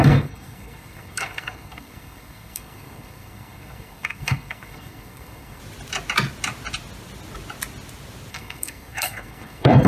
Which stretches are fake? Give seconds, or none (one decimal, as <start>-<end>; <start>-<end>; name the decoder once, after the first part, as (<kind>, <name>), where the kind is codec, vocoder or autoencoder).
0.0-5.6 (codec, SNAC); 8.3-9.9